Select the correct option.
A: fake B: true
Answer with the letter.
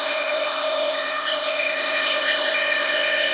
A